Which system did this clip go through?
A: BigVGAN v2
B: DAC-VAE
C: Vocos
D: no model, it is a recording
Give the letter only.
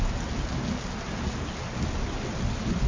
D